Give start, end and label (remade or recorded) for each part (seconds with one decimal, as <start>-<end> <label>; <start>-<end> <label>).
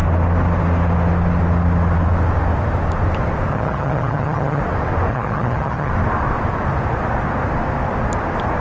0.0-3.5 recorded; 3.5-4.6 remade; 4.6-5.1 recorded; 5.1-5.9 remade; 5.9-8.6 recorded